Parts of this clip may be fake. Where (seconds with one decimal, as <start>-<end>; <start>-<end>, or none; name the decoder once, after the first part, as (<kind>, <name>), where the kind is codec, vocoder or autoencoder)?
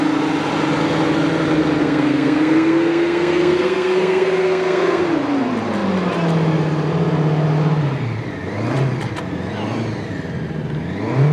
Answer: 1.8-5.0 (codec, SNAC)